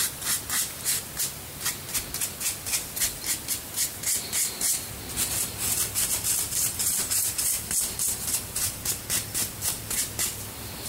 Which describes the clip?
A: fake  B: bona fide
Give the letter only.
B